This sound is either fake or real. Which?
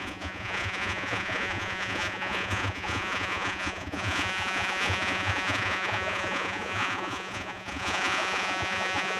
fake